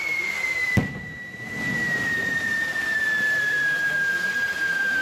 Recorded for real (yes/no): yes